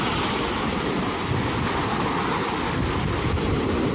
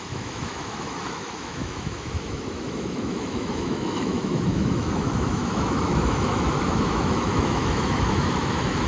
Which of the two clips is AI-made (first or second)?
second